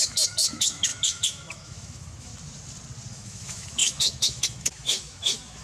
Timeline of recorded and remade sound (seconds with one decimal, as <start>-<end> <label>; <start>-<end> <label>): 0.0-2.3 remade; 2.3-3.1 recorded; 3.1-5.6 remade